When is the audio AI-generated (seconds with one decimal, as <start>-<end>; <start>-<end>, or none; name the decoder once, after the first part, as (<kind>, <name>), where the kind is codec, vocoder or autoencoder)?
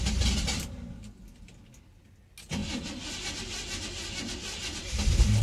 none